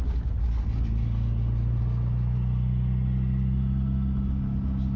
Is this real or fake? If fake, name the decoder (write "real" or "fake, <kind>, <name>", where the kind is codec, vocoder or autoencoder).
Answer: real